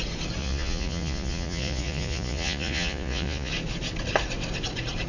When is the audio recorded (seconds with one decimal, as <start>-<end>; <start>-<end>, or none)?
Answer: 0.0-0.4; 3.5-5.1